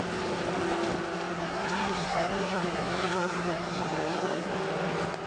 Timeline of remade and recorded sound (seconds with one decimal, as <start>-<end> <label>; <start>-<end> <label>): 0.0-1.3 recorded; 1.3-4.5 remade; 4.5-5.3 recorded